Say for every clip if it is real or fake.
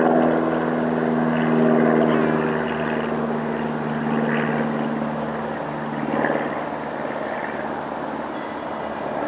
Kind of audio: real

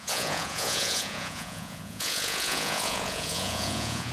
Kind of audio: fake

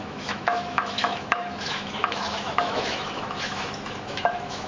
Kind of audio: fake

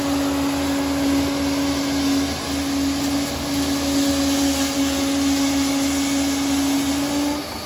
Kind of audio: real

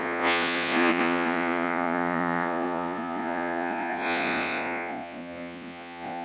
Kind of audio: fake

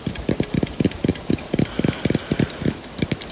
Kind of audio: real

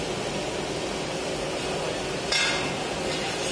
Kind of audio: real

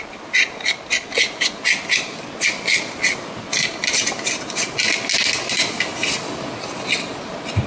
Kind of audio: real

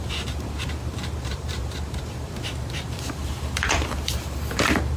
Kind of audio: fake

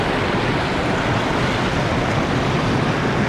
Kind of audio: real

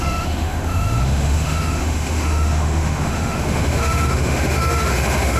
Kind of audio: fake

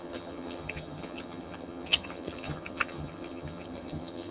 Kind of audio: fake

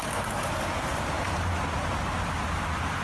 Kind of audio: real